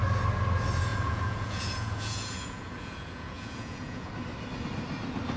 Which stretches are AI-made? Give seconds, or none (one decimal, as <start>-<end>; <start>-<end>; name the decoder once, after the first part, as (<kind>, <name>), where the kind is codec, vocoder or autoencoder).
0.9-4.1 (vocoder, Vocos)